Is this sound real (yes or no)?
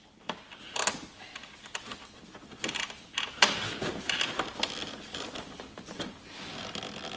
yes